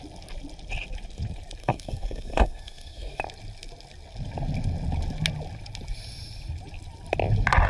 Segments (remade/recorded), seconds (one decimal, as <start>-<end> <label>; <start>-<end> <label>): 0.0-1.6 recorded; 1.6-3.2 remade; 3.2-7.7 recorded